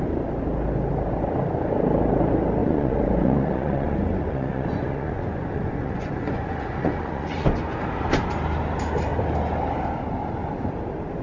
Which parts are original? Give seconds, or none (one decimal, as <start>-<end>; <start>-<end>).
0.0-2.6; 7.6-11.2